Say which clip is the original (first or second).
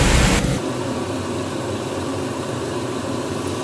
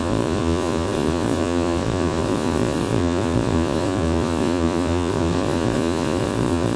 first